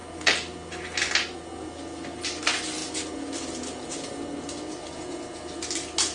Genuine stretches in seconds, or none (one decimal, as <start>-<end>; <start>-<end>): 0.0-6.1